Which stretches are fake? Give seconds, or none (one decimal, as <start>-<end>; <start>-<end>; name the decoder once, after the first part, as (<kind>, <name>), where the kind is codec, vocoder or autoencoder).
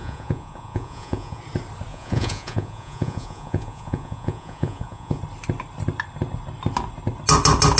0.0-1.4 (vocoder, Vocos); 1.9-5.2